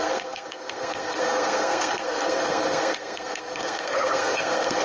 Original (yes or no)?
no